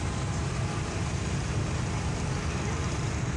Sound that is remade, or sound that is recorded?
recorded